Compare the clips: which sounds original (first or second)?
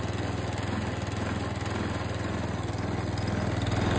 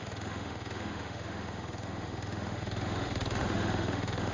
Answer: first